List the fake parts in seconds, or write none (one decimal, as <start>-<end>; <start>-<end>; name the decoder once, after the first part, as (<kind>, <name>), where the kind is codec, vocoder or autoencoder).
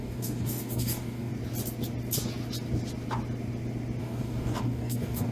0.0-1.3 (codec, DAC); 4.0-5.3